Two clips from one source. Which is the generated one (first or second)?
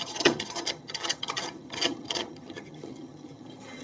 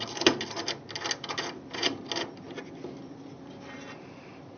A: first